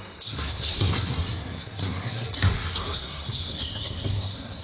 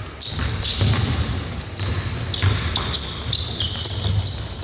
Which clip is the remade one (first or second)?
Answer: first